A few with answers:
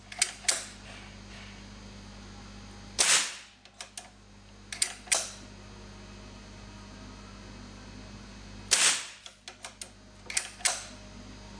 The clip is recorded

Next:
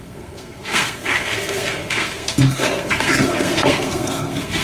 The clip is remade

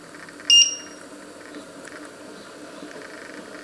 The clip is recorded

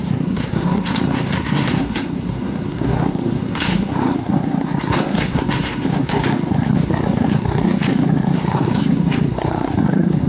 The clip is remade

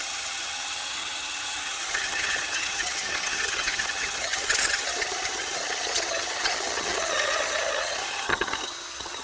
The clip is remade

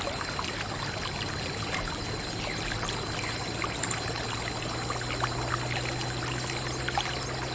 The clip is recorded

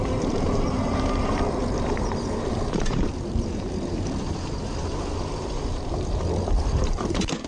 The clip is remade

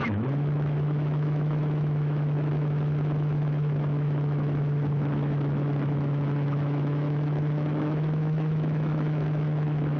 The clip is remade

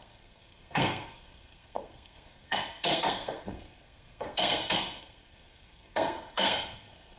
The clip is remade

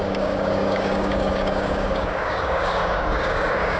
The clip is remade